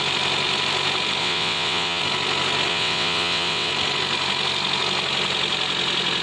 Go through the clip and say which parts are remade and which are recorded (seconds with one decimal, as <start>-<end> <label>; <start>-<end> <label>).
0.0-1.2 recorded; 1.2-2.0 remade; 2.0-2.7 recorded; 2.7-3.7 remade; 3.7-6.2 recorded